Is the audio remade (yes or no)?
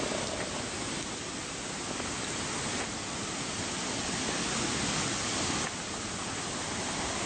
no